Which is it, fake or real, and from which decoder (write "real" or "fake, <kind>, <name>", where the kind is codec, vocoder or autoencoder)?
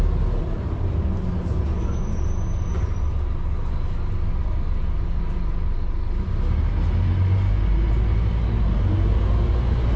real